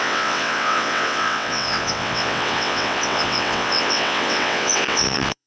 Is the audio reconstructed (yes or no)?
yes